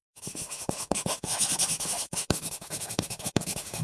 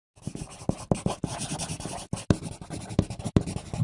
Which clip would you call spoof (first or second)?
first